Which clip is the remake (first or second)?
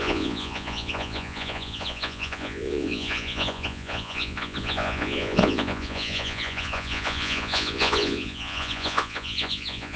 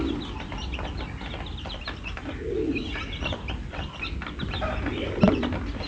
first